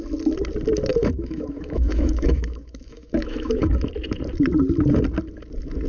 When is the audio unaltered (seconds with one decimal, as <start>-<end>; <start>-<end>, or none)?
0.0-0.9; 3.7-5.9